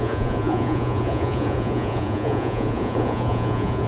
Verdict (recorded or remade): remade